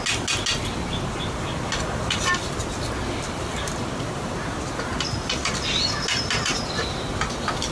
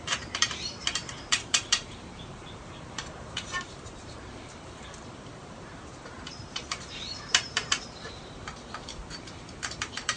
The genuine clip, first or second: first